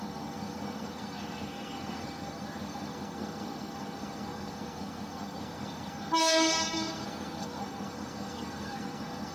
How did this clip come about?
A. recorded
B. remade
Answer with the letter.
B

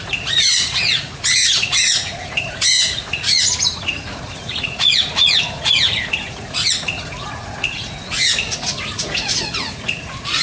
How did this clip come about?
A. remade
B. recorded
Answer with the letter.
A